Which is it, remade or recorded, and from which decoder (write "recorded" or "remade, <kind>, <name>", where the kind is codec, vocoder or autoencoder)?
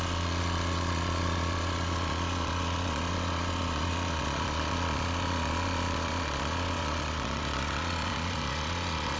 remade, vocoder, Vocos